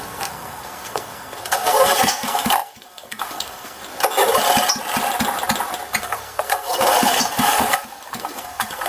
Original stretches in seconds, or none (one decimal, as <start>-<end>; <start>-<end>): 3.8-6.0